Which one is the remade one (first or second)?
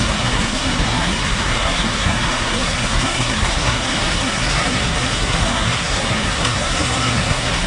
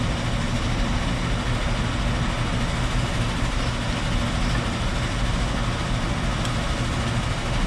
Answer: first